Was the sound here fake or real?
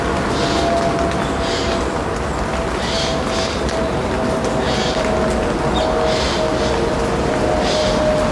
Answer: real